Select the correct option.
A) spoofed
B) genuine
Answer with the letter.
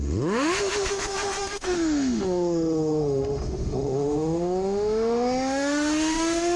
A